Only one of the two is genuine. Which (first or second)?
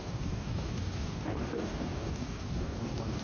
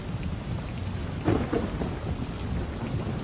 second